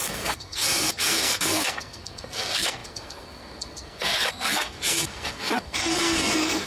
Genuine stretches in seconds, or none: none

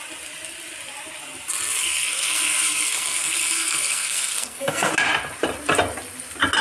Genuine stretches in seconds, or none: 0.0-1.8; 4.9-6.6